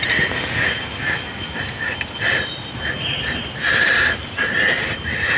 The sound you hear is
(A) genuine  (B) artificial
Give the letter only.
A